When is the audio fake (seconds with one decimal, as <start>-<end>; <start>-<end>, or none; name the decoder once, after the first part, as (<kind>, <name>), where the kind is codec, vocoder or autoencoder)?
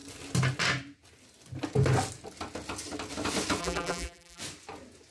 3.6-4.4 (vocoder, BigVGAN v2)